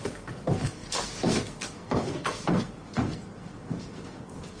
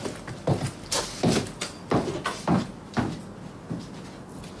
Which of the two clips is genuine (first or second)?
second